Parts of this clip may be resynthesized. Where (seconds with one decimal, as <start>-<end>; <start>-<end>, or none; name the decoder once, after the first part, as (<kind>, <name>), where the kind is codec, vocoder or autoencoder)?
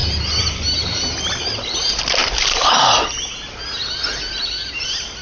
none